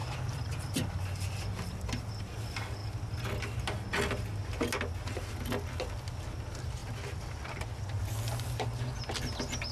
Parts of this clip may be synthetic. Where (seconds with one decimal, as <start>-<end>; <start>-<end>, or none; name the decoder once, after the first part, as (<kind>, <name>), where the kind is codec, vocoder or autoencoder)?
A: 0.0-1.8 (vocoder, BigVGAN v2); 6.8-7.4